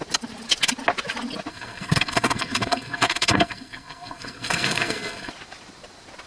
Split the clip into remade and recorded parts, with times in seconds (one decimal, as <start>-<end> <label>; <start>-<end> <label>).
0.0-1.5 recorded; 1.5-5.3 remade; 5.3-6.3 recorded